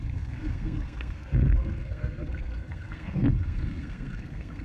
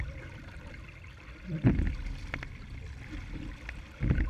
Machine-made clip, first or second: first